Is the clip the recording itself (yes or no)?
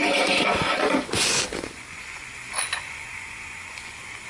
no